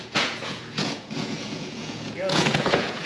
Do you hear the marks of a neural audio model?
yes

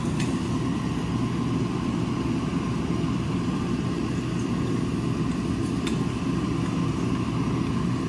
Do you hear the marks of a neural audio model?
no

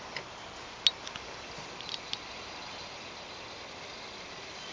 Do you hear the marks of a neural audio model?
no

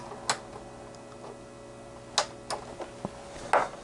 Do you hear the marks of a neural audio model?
no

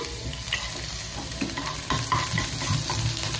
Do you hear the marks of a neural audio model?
no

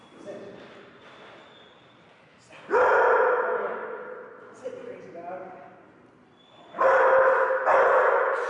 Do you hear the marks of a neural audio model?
no